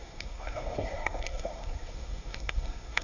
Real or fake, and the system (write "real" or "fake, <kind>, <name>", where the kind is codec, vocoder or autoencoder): fake, codec, SNAC